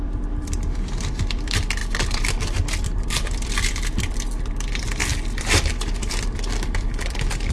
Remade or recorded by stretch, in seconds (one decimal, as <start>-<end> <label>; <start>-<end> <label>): 0.0-1.8 remade; 1.8-2.8 recorded; 2.8-7.5 remade